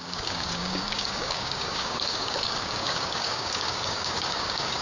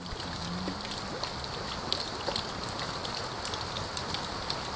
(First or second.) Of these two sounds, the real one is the second